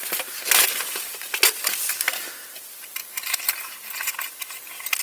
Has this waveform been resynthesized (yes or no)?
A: no